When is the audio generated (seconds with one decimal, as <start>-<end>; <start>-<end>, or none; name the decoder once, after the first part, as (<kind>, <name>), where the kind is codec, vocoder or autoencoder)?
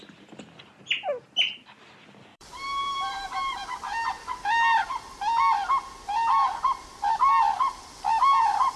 2.3-3.6 (vocoder, BigVGAN v2)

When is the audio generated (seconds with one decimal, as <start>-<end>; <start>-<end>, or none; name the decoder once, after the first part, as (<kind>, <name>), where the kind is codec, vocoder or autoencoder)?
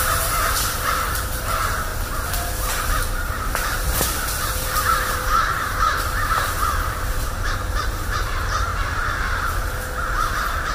0.0-1.9 (vocoder, BigVGAN v2); 3.1-8.7; 9.6-10.7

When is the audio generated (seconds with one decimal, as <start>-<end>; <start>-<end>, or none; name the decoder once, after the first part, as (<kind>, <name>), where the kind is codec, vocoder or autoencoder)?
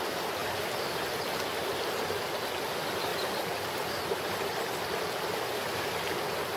3.1-4.8 (vocoder, BigVGAN v2)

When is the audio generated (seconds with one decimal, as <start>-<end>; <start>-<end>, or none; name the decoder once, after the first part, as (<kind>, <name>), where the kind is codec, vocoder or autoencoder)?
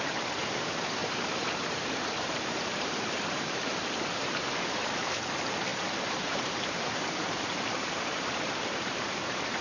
0.0-9.6 (vocoder, BigVGAN v2)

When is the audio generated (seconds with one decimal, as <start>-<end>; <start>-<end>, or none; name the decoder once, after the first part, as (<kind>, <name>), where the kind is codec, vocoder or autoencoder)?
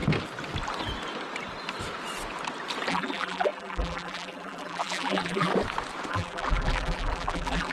2.9-5.5 (vocoder, BigVGAN v2); 6.1-7.7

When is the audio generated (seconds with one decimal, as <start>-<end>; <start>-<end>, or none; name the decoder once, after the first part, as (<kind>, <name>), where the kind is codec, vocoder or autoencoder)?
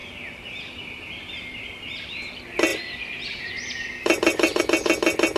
0.0-2.2 (vocoder, BigVGAN v2); 2.7-4.6